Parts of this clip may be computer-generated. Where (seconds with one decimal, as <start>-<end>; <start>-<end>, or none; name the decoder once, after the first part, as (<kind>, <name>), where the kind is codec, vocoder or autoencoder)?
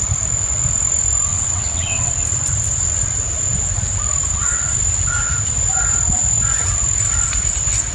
1.3-2.1 (vocoder, WaveNeXt); 4.3-4.8